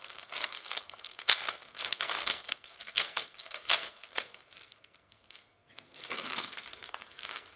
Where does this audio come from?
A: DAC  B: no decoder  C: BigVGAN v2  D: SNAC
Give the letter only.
D